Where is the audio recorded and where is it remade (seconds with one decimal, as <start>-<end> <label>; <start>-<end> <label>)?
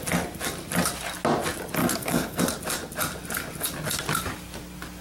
0.0-1.8 recorded; 1.8-2.4 remade; 2.4-5.0 recorded